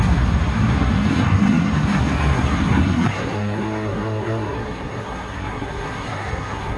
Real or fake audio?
fake